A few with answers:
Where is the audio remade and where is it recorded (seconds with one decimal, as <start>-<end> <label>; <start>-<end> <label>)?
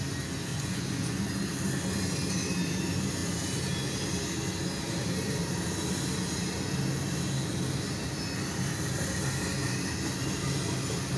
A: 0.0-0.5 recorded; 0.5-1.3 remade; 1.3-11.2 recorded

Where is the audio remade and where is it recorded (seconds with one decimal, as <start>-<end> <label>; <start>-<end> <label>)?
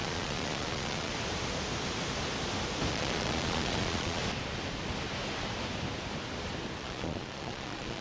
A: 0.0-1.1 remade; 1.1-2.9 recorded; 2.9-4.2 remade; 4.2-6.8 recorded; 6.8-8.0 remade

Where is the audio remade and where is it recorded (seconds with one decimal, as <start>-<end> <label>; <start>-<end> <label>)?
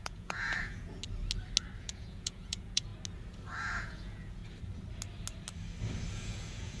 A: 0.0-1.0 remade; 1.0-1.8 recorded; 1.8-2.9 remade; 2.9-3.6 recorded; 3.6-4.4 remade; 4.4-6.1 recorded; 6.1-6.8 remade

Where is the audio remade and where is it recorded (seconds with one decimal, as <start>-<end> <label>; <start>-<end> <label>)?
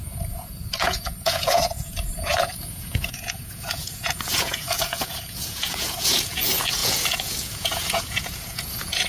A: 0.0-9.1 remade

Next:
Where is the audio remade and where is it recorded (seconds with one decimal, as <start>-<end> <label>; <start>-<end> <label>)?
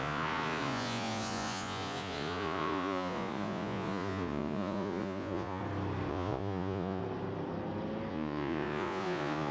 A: 0.0-5.6 remade; 5.6-6.1 recorded; 6.1-7.0 remade; 7.0-8.1 recorded; 8.1-9.5 remade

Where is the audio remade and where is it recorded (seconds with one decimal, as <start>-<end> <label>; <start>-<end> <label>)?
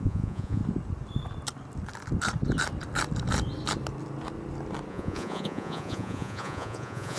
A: 0.0-0.6 remade; 0.6-4.9 recorded; 4.9-7.2 remade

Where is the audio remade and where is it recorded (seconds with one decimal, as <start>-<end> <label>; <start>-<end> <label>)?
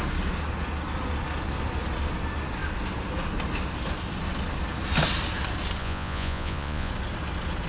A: 0.0-5.8 recorded; 5.8-6.9 remade; 6.9-7.7 recorded